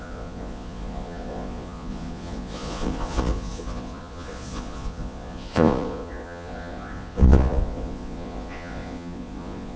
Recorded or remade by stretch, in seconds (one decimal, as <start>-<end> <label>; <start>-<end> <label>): 0.0-9.8 remade